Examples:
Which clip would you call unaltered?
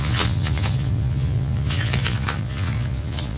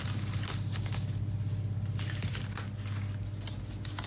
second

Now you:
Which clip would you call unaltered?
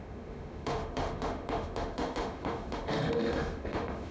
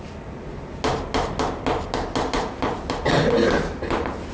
second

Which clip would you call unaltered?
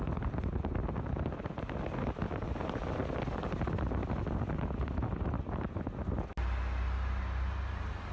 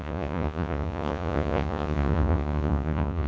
first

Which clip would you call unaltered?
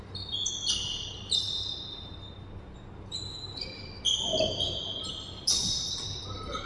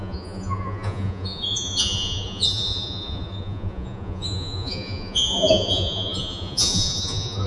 first